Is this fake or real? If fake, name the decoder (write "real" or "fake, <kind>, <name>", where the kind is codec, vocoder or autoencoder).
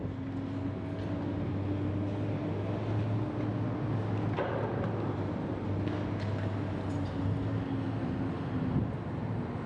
real